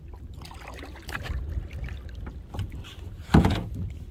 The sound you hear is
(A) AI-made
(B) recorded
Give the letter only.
B